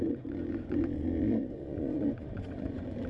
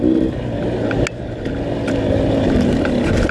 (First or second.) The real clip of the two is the second